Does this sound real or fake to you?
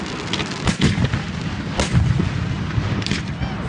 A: real